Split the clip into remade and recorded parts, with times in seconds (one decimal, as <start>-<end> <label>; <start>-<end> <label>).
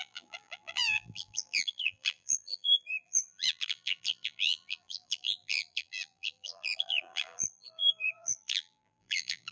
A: 0.0-9.5 remade